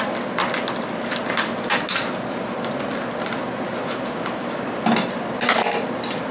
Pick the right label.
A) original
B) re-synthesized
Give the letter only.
A